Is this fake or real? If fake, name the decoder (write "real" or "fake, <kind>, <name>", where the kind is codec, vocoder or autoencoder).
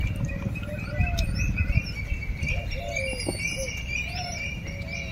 real